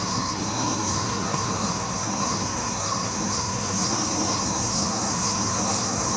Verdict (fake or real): fake